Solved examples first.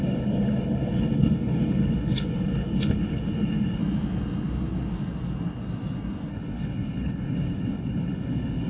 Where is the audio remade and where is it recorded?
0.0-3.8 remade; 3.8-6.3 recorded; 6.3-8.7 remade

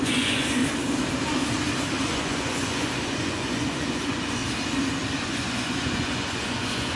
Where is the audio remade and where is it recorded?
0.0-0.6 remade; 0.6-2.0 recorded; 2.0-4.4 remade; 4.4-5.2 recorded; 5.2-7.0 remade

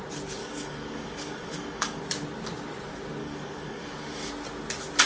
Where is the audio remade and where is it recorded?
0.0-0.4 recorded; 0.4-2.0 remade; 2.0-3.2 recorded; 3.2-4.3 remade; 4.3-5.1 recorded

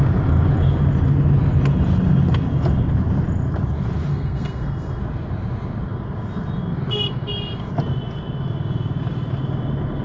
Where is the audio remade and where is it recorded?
0.0-4.1 recorded; 4.1-5.0 remade; 5.0-10.0 recorded